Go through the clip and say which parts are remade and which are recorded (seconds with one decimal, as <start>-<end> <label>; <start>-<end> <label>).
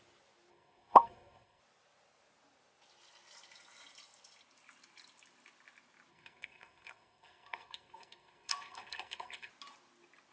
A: 0.0-0.5 recorded; 0.5-1.6 remade; 1.6-6.1 recorded; 6.1-9.5 remade; 9.5-10.3 recorded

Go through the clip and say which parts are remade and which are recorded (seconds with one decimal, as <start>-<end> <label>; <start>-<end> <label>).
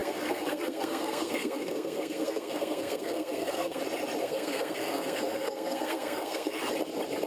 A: 0.0-3.8 remade; 3.8-4.2 recorded; 4.2-6.6 remade; 6.6-7.3 recorded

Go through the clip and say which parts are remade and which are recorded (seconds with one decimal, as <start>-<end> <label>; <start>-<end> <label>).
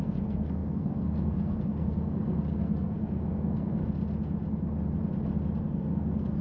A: 0.0-3.8 remade; 3.8-5.6 recorded; 5.6-6.4 remade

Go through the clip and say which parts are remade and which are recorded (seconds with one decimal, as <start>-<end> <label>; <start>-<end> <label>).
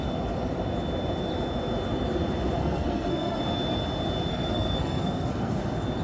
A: 0.0-2.6 recorded; 2.6-3.4 remade; 3.4-4.3 recorded; 4.3-5.5 remade; 5.5-6.0 recorded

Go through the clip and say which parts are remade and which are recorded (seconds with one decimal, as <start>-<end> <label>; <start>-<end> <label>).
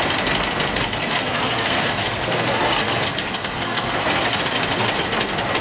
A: 0.0-1.0 recorded; 1.0-4.4 remade; 4.4-5.6 recorded